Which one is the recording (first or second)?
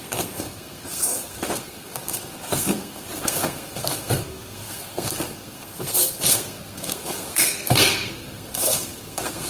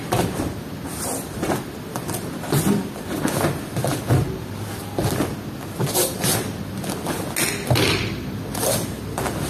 second